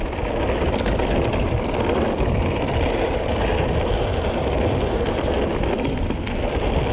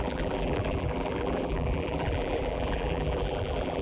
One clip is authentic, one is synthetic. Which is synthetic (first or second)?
second